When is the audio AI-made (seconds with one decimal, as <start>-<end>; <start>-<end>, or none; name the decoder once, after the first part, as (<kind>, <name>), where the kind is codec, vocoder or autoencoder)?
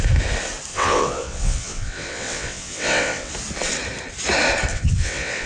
0.7-3.3 (vocoder, WaveNeXt); 4.7-5.5